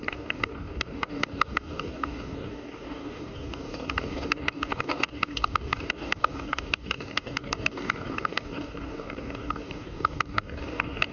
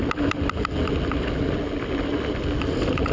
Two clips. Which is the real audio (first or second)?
second